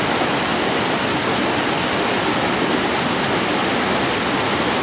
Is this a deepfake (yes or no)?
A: no